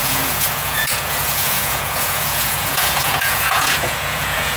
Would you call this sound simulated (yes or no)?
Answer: yes